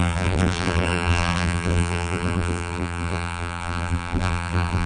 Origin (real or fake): fake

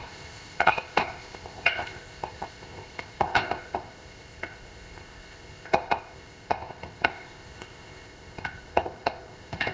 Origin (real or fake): fake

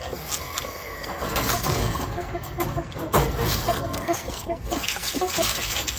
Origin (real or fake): fake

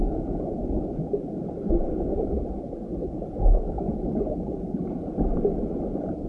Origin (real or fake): fake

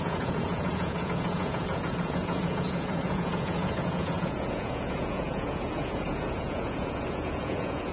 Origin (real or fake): fake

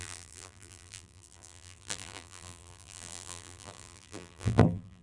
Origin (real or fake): fake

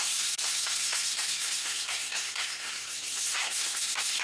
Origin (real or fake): fake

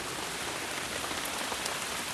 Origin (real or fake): real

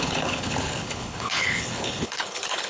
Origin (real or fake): fake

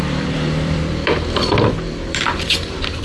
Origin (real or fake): fake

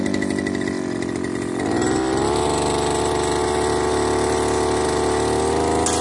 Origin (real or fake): real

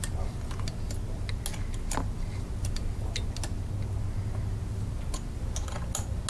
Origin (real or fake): real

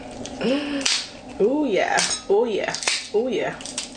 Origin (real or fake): real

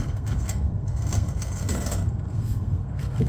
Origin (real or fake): fake